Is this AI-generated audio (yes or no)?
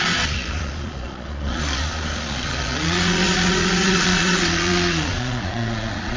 yes